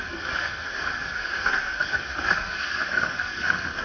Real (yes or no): no